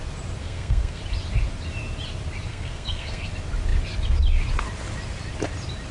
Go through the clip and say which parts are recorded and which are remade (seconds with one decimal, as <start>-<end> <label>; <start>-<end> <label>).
0.0-0.4 recorded; 0.4-1.0 remade; 1.0-2.5 recorded; 2.5-3.3 remade; 3.3-5.9 recorded